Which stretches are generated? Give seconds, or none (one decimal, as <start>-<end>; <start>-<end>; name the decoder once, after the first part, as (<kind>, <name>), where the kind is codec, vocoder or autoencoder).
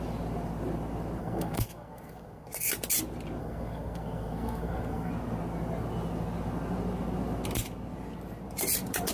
1.2-2.7 (codec, SNAC); 3.4-5.1